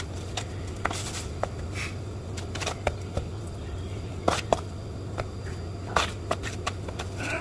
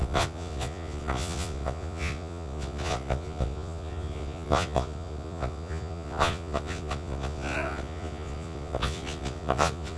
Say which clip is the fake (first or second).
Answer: second